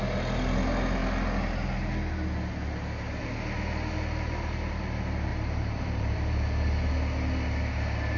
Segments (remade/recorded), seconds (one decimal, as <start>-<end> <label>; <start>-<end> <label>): 0.0-5.3 recorded; 5.3-6.9 remade; 6.9-8.2 recorded